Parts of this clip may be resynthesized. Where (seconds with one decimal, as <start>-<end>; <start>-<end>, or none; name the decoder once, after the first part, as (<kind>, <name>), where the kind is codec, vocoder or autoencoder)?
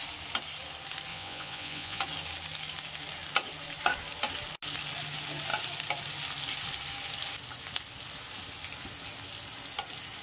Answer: 1.1-2.0 (vocoder, Vocos)